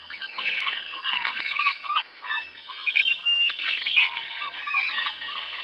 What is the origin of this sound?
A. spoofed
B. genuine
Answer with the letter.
A